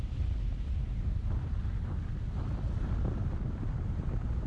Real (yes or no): yes